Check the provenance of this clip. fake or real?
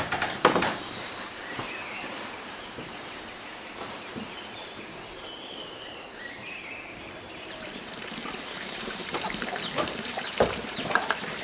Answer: fake